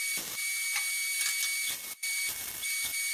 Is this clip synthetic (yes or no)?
no